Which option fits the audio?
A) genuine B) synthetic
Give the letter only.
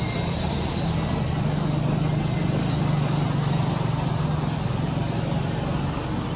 A